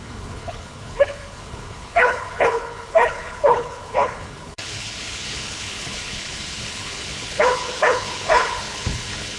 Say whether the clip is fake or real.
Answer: fake